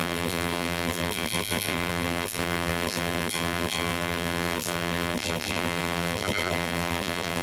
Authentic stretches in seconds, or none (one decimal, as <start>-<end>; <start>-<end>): none